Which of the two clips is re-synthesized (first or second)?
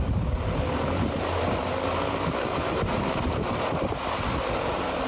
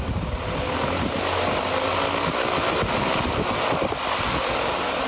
first